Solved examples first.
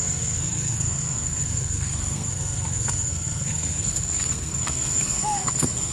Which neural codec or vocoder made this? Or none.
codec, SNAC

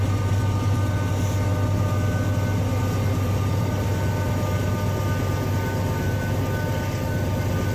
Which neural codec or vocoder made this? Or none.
none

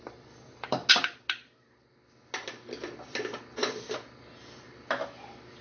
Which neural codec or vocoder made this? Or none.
none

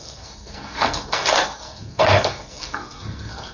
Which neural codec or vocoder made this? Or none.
codec, SNAC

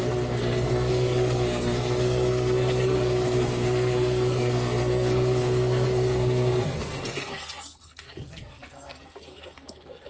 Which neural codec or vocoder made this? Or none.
codec, SNAC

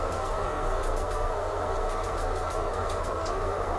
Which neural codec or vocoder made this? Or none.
codec, SNAC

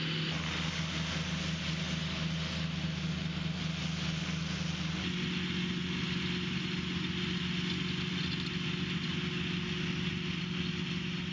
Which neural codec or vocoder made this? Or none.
none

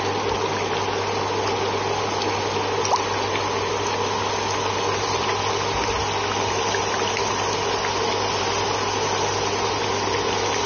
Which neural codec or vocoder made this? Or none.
none